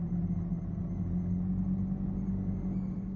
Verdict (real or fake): real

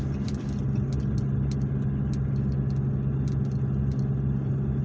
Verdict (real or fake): real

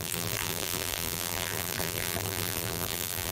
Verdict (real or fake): fake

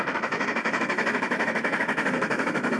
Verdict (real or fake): fake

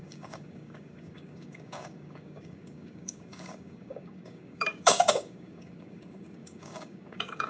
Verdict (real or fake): fake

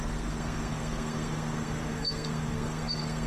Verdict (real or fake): fake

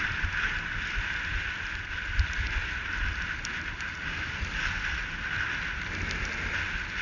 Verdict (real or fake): real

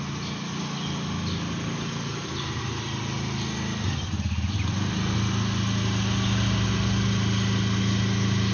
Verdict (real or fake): real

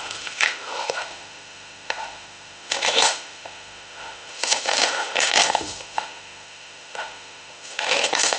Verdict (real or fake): fake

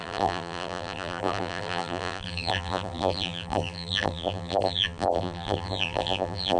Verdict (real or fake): fake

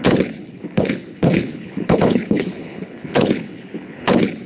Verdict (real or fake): fake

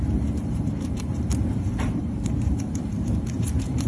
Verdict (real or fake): fake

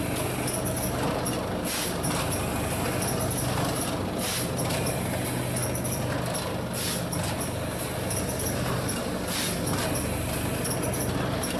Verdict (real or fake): real